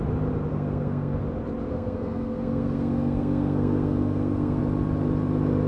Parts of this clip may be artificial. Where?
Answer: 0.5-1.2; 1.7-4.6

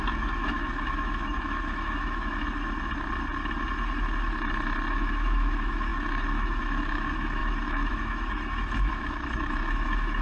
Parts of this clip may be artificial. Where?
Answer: 0.0-2.4; 4.9-10.2

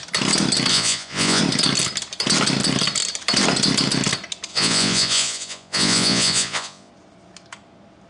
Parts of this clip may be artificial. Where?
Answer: 0.7-1.4; 4.5-6.9

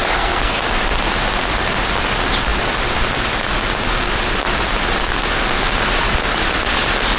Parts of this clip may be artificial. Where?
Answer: 0.0-0.6